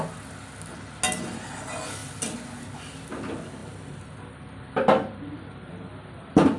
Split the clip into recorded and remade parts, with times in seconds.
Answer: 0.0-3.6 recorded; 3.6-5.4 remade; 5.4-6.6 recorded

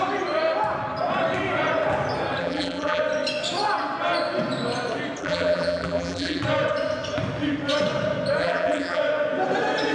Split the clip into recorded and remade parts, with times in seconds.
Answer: 0.0-2.4 recorded; 2.4-3.0 remade; 3.0-5.2 recorded; 5.2-6.4 remade; 6.4-8.4 recorded; 8.4-9.0 remade; 9.0-9.9 recorded

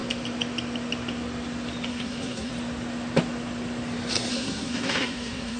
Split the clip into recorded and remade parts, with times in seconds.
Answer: 0.0-1.9 recorded; 1.9-2.5 remade; 2.5-4.3 recorded; 4.3-5.6 remade

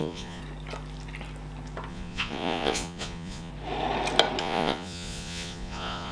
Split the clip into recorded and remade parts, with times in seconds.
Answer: 0.0-0.4 remade; 0.4-1.9 recorded; 1.9-3.5 remade; 3.5-4.4 recorded; 4.4-6.1 remade

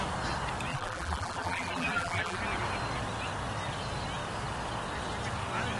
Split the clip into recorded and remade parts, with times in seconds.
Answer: 0.0-0.7 recorded; 0.7-2.4 remade; 2.4-5.8 recorded

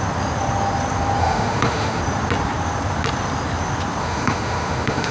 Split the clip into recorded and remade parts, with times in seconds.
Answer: 0.0-1.2 recorded; 1.2-2.0 remade; 2.0-4.0 recorded; 4.0-5.1 remade

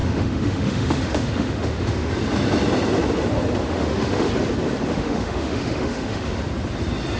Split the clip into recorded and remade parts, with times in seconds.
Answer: 0.0-2.1 remade; 2.1-3.7 recorded; 3.7-4.3 remade; 4.3-4.9 recorded; 4.9-6.4 remade; 6.4-7.2 recorded